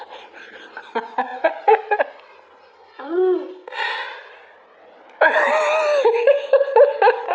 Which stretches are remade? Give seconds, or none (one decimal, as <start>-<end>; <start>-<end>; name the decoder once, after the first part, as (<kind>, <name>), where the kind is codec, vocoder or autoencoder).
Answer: 1.3-2.0 (vocoder, Vocos)